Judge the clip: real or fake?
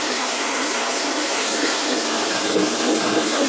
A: fake